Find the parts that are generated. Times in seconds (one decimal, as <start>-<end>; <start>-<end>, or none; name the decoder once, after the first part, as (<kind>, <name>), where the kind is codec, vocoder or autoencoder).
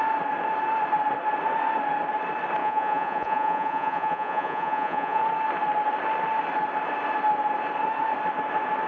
2.6-5.2 (vocoder, Vocos)